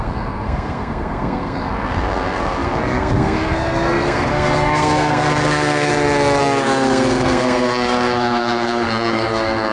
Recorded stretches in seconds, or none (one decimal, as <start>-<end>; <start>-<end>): 5.9-6.4